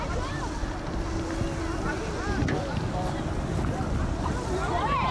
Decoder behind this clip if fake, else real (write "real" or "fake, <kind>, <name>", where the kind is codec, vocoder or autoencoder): real